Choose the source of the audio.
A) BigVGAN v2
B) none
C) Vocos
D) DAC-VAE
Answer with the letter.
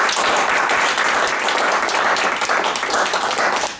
B